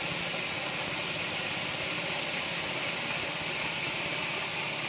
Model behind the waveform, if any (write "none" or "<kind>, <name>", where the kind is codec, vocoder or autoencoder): none